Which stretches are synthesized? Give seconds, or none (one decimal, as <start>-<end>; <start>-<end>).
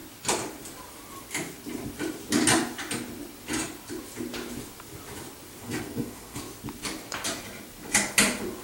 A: 5.6-6.4